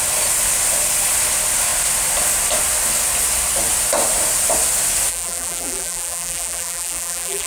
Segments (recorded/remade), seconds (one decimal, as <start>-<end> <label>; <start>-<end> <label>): 0.0-5.1 recorded; 5.1-7.5 remade